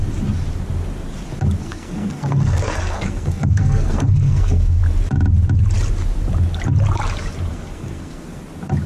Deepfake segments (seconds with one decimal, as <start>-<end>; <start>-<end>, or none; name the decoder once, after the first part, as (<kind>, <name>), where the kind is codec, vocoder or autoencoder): 1.6-4.8 (codec, SNAC); 7.5-8.4